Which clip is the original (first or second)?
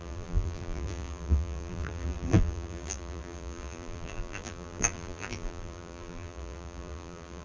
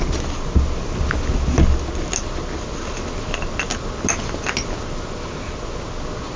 second